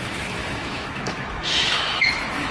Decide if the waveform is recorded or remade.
remade